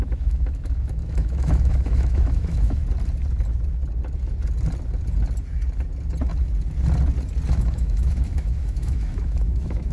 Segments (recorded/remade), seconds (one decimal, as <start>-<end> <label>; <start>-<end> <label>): 0.0-2.8 remade; 2.8-7.5 recorded; 7.5-9.9 remade